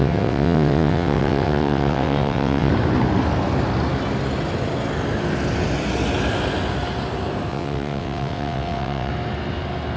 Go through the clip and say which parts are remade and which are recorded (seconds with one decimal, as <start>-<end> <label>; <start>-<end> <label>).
0.0-2.7 remade; 2.7-7.5 recorded; 7.5-9.1 remade; 9.1-10.0 recorded